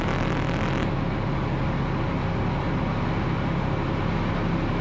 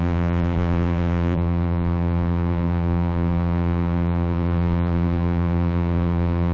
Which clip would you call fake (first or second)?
second